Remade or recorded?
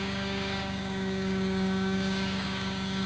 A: remade